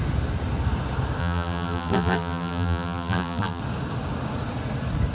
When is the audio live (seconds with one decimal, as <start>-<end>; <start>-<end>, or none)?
0.0-1.2; 3.6-5.1